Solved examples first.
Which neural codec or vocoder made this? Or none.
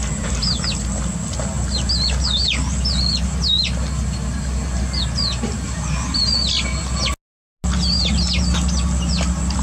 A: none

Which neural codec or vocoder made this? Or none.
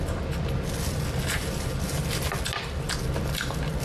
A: none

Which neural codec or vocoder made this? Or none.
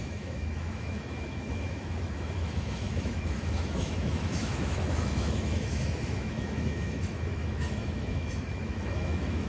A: autoencoder, DAC-VAE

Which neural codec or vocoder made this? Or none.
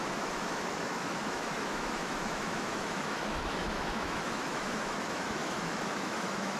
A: autoencoder, DAC-VAE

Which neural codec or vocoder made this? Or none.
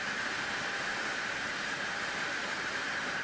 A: none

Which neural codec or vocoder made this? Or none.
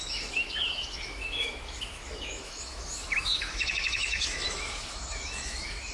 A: autoencoder, DAC-VAE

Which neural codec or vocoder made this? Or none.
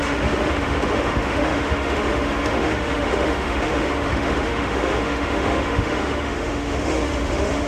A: autoencoder, DAC-VAE